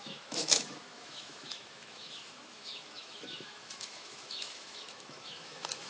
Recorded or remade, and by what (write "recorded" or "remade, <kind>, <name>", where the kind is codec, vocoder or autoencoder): remade, autoencoder, DAC-VAE